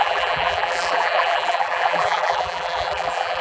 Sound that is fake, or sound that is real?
fake